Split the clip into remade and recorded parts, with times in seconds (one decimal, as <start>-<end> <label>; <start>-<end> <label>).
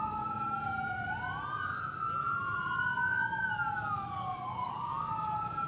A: 0.0-3.0 recorded; 3.0-5.1 remade; 5.1-5.7 recorded